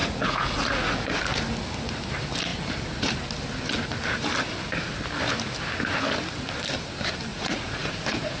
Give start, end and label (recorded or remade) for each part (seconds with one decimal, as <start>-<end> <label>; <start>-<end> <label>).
0.0-1.2 remade; 1.2-7.3 recorded; 7.3-8.4 remade